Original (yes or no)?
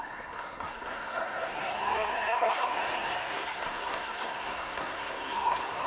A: no